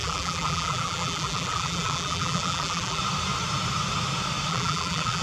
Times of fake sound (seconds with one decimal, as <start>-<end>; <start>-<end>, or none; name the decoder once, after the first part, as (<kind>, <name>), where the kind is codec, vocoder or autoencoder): 0.0-3.0 (vocoder, BigVGAN v2); 4.5-5.2